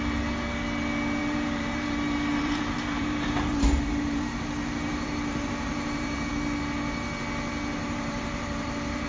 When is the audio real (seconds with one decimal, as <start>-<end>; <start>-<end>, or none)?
0.0-1.2; 6.3-7.8